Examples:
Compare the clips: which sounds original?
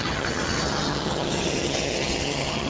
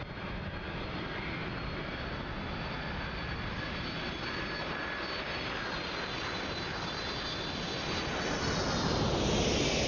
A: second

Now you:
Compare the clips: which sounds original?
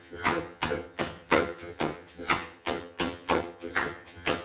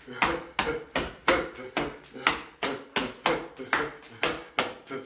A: second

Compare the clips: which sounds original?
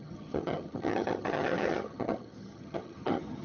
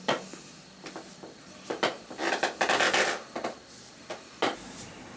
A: second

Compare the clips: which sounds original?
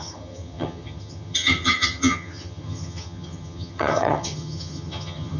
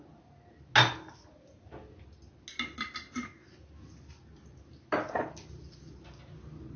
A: second